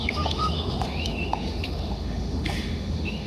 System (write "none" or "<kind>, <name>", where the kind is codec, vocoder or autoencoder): autoencoder, DAC-VAE